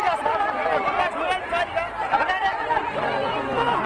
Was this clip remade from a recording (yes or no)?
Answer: no